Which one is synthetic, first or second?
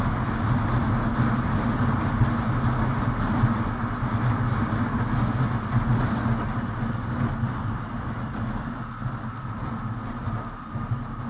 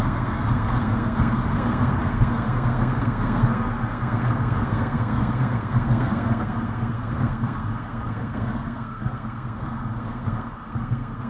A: second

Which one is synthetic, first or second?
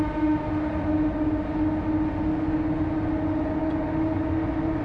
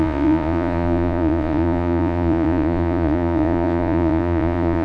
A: second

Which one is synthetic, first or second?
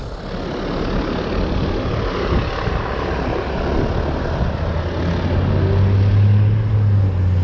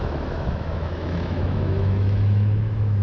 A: second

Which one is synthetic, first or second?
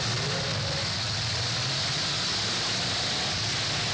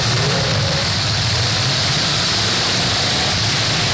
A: second